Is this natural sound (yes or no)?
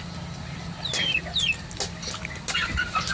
yes